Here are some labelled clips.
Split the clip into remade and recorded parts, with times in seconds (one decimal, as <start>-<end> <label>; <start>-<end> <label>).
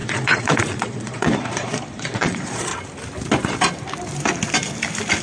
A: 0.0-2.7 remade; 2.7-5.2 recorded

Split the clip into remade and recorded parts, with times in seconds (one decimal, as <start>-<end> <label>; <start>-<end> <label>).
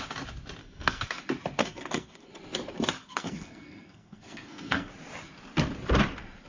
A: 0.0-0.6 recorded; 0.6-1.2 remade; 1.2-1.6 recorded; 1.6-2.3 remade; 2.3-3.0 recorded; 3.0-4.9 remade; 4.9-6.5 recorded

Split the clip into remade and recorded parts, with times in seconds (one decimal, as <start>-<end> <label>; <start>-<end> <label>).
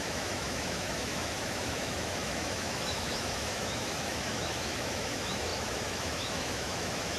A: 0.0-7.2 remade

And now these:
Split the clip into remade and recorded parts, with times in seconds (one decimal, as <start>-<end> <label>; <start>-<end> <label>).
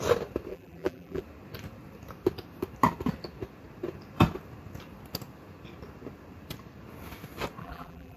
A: 0.0-0.5 recorded; 0.5-1.2 remade; 1.2-7.6 recorded; 7.6-8.2 remade